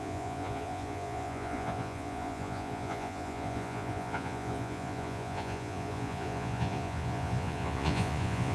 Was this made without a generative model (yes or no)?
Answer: no